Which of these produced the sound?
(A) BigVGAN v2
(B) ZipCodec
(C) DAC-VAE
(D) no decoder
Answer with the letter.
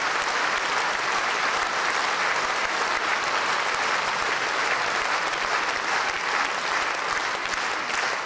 D